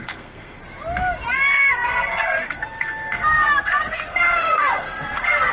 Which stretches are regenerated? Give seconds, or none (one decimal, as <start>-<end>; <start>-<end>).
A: 0.0-0.6; 1.3-5.5